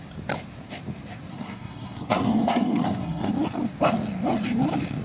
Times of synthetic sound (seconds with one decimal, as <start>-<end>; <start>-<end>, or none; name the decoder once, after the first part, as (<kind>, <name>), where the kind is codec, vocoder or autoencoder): 1.3-3.3 (codec, SNAC)